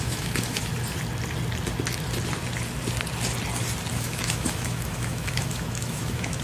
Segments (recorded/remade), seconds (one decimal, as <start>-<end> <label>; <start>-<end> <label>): 0.0-0.7 remade; 0.7-3.9 recorded; 3.9-6.4 remade

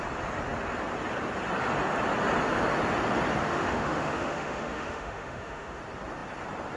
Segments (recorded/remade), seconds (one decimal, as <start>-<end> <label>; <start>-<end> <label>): 0.0-3.4 recorded; 3.4-5.8 remade; 5.8-6.8 recorded

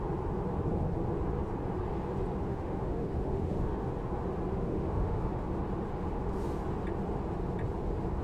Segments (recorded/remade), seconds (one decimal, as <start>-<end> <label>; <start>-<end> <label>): 0.0-2.5 recorded; 2.5-3.9 remade; 3.9-4.5 recorded; 4.5-5.4 remade; 5.4-8.2 recorded

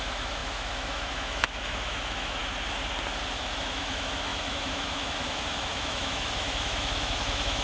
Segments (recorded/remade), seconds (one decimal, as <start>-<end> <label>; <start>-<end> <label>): 0.0-2.4 remade; 2.4-3.4 recorded; 3.4-7.6 remade

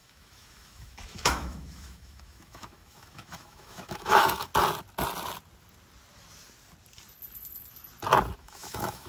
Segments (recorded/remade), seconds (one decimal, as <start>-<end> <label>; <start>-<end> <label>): 0.0-4.5 remade; 4.5-8.4 recorded; 8.4-9.1 remade

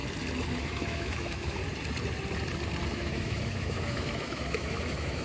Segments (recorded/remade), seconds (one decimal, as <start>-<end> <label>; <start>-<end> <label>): 0.0-0.6 recorded; 0.6-1.6 remade; 1.6-2.9 recorded; 2.9-5.2 remade

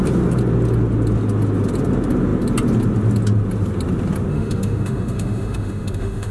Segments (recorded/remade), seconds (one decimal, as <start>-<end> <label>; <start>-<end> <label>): 0.0-4.3 recorded; 4.3-6.3 remade